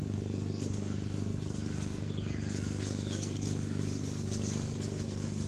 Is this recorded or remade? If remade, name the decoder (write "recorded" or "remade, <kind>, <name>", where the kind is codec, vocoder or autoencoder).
remade, codec, SNAC